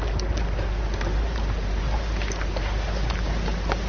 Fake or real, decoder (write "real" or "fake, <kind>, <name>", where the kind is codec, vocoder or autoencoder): real